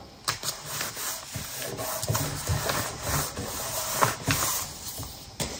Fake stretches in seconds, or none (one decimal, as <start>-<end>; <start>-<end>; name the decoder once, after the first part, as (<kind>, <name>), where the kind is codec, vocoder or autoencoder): none